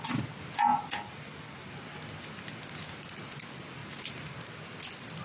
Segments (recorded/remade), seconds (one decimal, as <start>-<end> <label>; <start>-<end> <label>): 0.0-0.7 recorded; 0.7-1.7 remade; 1.7-3.8 recorded; 3.8-4.5 remade; 4.5-5.2 recorded

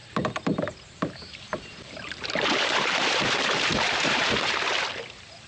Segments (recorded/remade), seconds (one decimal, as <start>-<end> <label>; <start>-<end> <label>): 0.0-3.3 remade; 3.3-3.7 recorded; 3.7-4.3 remade; 4.3-5.5 recorded